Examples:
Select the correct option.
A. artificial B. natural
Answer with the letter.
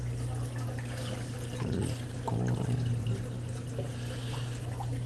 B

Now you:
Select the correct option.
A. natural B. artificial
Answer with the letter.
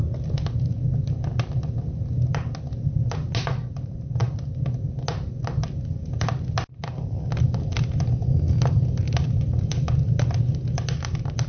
A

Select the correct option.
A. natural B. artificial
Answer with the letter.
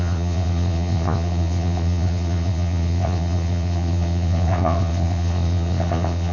B